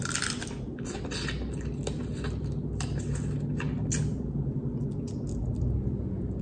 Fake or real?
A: real